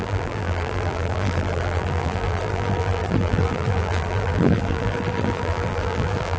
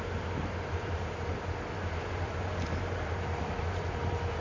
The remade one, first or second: first